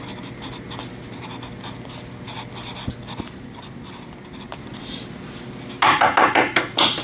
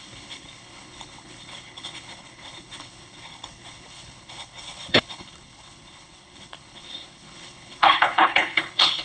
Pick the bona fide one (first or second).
first